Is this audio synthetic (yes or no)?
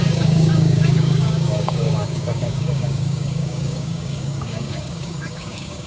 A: yes